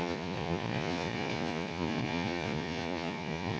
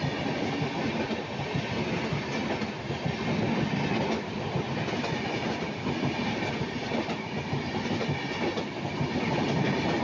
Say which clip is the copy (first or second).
first